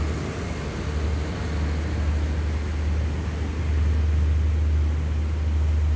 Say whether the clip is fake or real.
real